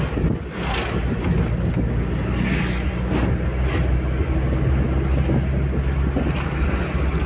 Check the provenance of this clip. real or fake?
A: real